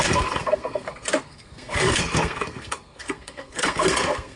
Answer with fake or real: fake